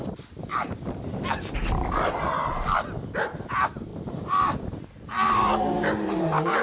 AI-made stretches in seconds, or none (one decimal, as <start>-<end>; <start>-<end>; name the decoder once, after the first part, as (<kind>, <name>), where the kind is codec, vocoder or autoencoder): none